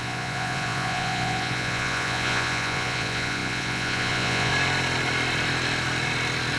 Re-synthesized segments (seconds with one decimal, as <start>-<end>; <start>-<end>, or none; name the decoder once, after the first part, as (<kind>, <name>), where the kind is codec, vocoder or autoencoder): 0.0-4.5 (vocoder, Vocos)